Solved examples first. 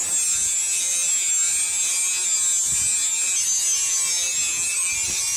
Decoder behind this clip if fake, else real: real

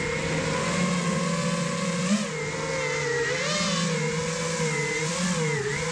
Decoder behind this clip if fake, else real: real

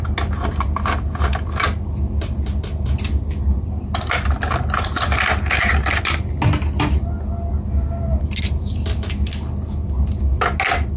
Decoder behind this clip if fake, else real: real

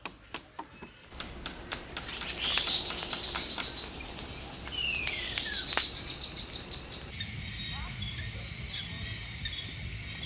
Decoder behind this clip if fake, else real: real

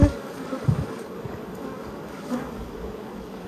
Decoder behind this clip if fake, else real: fake, codec, DAC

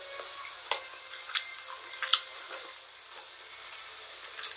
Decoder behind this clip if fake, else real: real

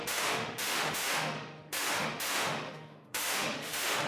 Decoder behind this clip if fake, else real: fake, autoencoder, DAC-VAE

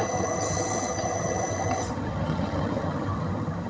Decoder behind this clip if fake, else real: fake, vocoder, HiFi-GAN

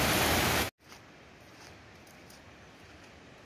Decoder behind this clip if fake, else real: real